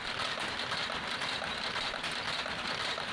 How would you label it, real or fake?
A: fake